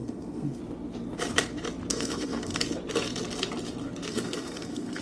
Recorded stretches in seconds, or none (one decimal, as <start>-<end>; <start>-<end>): 0.6-1.9; 2.6-4.1